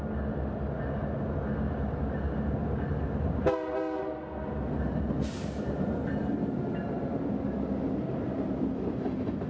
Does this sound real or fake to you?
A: real